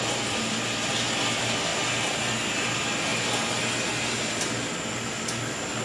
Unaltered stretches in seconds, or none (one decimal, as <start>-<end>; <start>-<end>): 0.0-5.8